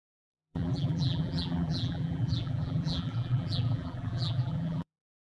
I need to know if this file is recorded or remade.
remade